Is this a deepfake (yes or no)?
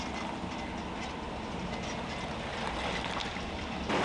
no